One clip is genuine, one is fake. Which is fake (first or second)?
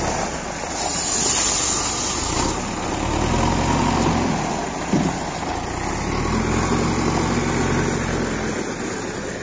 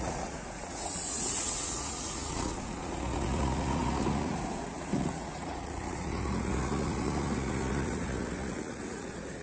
second